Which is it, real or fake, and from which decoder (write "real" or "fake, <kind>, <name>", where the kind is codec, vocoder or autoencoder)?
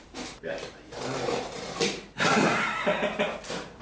fake, vocoder, BigVGAN v2